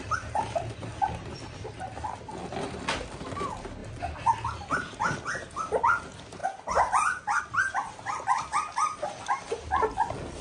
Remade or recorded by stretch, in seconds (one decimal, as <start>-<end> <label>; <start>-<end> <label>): 0.0-10.4 recorded